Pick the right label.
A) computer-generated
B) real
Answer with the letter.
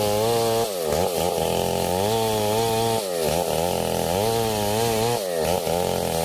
B